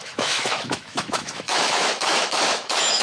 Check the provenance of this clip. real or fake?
fake